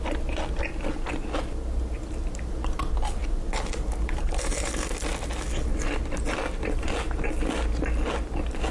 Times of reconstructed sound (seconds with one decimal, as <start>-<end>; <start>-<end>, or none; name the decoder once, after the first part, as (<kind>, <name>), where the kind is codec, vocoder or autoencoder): none